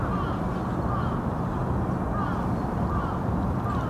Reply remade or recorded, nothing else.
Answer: recorded